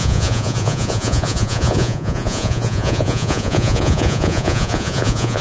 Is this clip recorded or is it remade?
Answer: remade